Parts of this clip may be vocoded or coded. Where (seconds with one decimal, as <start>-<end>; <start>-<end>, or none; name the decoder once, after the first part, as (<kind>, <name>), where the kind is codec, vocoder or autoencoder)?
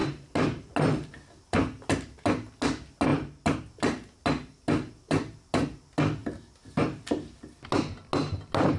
none